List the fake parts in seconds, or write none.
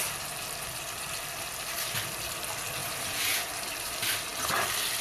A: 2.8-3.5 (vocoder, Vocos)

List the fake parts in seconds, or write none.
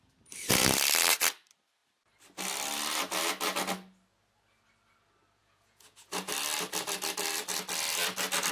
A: 5.4-6.3 (vocoder, Vocos)